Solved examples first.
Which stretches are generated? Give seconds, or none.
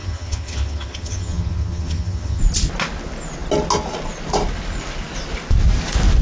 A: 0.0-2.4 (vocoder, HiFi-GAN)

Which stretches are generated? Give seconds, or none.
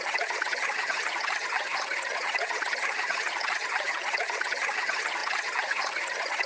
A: 0.0-6.5 (vocoder, HiFi-GAN)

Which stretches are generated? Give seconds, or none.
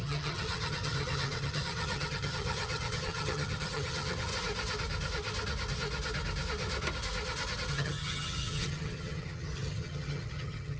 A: 0.0-4.3 (vocoder, HiFi-GAN); 7.7-10.8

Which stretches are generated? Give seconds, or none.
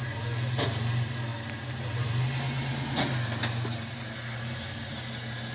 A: none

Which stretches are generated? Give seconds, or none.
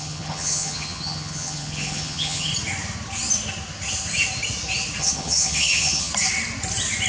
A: 0.0-2.5 (vocoder, HiFi-GAN); 5.0-6.1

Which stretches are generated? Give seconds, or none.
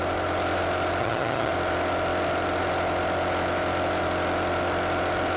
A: 1.0-1.5 (vocoder, HiFi-GAN)